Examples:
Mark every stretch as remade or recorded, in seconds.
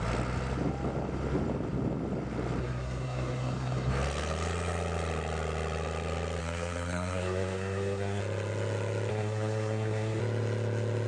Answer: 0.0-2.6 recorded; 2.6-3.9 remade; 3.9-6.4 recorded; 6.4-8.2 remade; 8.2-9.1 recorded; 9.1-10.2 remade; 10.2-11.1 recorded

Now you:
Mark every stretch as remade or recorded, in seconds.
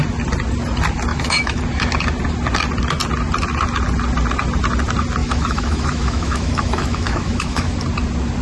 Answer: 0.0-1.1 recorded; 1.1-1.6 remade; 1.6-5.2 recorded; 5.2-7.7 remade; 7.7-8.4 recorded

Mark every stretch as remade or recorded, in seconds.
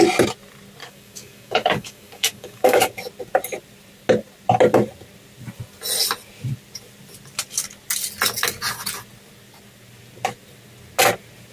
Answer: 0.0-0.8 recorded; 0.8-2.9 remade; 2.9-11.5 recorded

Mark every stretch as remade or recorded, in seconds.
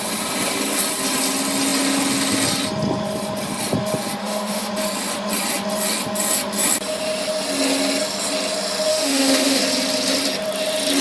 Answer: 0.0-4.2 recorded; 4.2-4.7 remade; 4.7-8.9 recorded; 8.9-9.6 remade; 9.6-11.0 recorded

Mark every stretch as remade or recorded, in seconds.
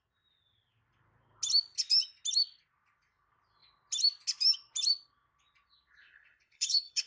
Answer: 0.0-6.0 recorded; 6.0-7.1 remade